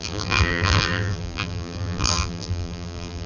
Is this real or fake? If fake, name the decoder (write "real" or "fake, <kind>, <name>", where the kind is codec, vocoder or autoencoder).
fake, vocoder, BigVGAN v2